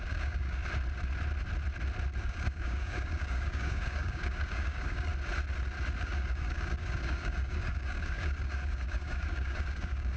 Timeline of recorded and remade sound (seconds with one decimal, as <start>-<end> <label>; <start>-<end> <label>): 0.0-0.6 remade; 0.6-2.2 recorded; 2.2-5.1 remade; 5.1-6.0 recorded; 6.0-10.2 remade